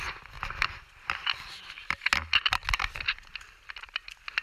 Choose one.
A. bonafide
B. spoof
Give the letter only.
A